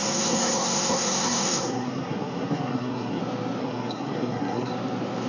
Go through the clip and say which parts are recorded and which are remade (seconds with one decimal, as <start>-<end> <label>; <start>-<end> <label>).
0.0-3.2 remade; 3.2-3.6 recorded; 3.6-4.7 remade; 4.7-5.3 recorded